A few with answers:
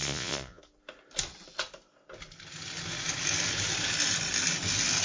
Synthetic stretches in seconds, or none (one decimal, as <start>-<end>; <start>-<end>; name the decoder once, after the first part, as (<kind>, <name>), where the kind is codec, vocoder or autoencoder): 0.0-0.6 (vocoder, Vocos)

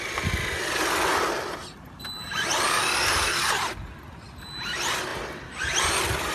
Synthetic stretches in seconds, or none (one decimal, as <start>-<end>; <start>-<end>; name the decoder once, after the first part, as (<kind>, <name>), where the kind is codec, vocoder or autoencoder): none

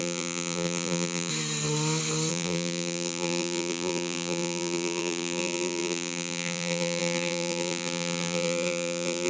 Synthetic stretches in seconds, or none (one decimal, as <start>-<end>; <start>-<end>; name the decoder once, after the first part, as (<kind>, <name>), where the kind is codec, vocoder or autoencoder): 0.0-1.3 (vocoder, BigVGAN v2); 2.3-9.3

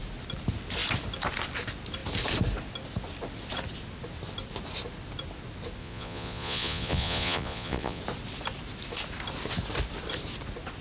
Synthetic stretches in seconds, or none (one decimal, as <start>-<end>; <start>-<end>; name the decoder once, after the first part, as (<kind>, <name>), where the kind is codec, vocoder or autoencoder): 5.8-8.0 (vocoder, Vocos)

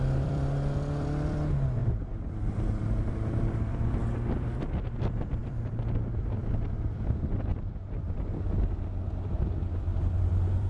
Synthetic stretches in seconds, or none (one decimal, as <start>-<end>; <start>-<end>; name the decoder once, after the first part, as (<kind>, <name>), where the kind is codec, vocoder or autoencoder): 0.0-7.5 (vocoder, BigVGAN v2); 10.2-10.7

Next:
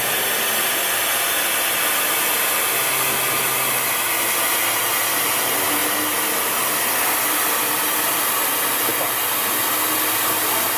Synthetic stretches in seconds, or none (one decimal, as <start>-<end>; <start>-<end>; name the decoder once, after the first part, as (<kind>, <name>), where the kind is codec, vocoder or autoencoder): none

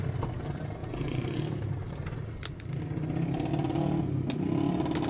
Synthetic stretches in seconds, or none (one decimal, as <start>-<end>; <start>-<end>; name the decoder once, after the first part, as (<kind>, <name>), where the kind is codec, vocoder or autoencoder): 0.8-1.4 (vocoder, Vocos)

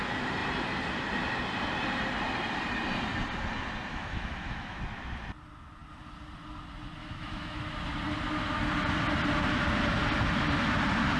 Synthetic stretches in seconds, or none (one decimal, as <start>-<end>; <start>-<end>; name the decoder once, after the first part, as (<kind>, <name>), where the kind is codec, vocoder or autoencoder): 3.9-4.8 (autoencoder, DAC-VAE); 7.0-7.6